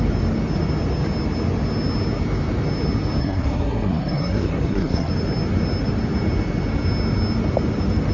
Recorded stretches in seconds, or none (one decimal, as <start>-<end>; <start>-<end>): 0.0-3.2; 5.1-8.1